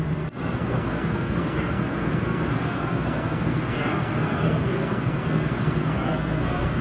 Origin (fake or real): fake